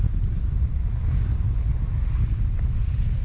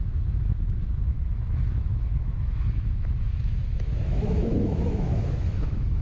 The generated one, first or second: second